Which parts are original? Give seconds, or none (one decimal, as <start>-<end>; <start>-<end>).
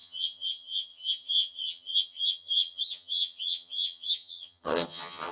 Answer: none